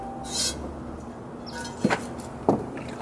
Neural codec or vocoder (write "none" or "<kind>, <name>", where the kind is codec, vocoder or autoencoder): none